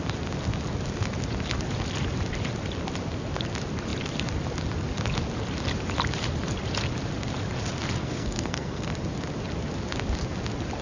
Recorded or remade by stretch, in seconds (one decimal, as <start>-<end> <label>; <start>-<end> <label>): 0.0-8.0 recorded; 8.0-8.9 remade; 8.9-10.8 recorded

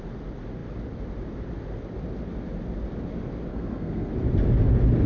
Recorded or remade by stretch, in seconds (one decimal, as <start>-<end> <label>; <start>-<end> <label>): 0.0-3.5 recorded; 3.5-4.1 remade; 4.1-5.1 recorded